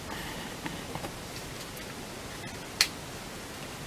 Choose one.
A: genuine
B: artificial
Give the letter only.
A